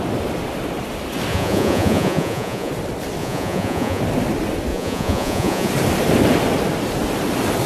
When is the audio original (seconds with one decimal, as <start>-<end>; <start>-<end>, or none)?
0.0-1.3; 2.7-3.2; 4.0-4.7; 5.7-7.7